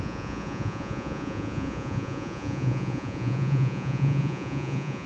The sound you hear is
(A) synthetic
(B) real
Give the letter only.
A